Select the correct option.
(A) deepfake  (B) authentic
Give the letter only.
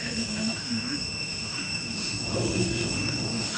A